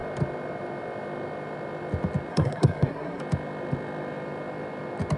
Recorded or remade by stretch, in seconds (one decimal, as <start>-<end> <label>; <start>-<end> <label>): 0.0-2.3 recorded; 2.3-3.2 remade; 3.2-5.2 recorded